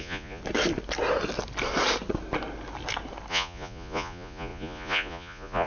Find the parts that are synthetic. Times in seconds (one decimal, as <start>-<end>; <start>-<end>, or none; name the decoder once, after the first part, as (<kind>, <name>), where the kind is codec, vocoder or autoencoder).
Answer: 0.0-0.4 (vocoder, Vocos); 3.3-5.7